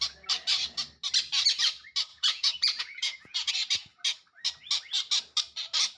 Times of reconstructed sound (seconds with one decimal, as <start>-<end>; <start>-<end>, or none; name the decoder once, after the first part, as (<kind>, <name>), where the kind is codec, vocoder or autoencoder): 2.1-3.5 (vocoder, Vocos)